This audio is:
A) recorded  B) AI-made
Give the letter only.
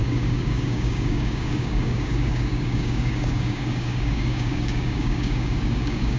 B